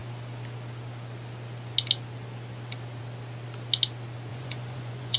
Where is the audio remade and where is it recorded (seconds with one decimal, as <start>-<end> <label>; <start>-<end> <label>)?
0.0-4.3 recorded; 4.3-5.2 remade